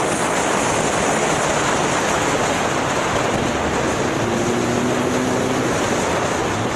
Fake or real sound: real